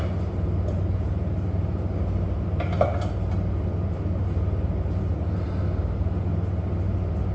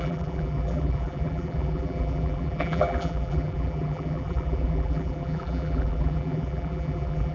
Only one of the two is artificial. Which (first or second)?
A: second